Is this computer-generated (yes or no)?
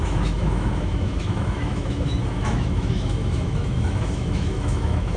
yes